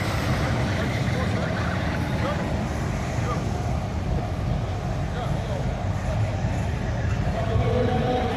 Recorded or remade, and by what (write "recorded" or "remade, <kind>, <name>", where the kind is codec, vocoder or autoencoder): remade, vocoder, BigVGAN v2